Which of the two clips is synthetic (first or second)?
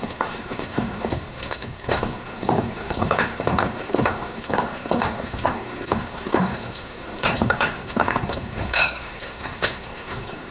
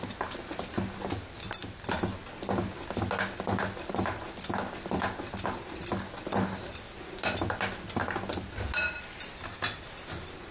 first